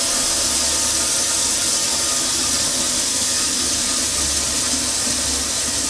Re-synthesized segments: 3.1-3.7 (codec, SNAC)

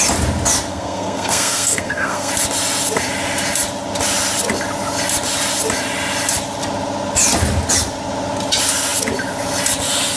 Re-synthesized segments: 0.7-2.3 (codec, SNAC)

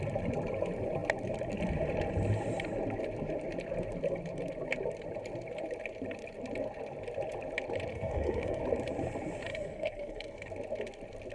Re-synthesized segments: 7.9-8.6 (codec, SNAC); 9.5-10.5

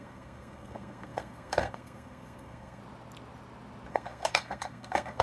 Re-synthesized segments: 0.0-2.8 (codec, SNAC); 3.9-5.2